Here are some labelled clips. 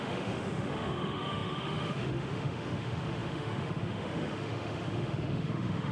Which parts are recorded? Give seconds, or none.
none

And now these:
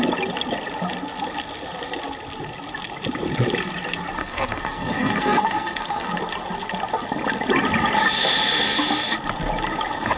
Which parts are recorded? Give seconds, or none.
0.0-4.2; 6.1-10.2

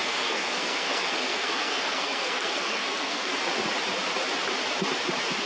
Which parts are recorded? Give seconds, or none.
3.3-5.5

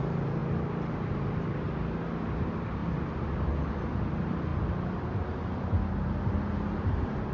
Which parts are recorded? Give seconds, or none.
0.0-7.3

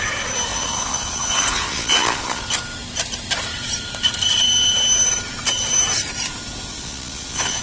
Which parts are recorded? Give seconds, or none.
0.0-0.5; 2.4-6.7

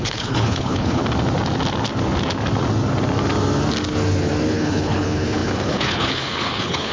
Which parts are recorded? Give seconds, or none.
1.0-4.5

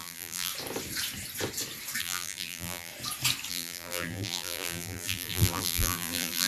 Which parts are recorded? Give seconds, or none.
0.5-2.0; 2.9-3.5